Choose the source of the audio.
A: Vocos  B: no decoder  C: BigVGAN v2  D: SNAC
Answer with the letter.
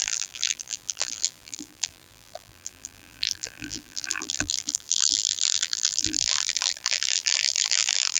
C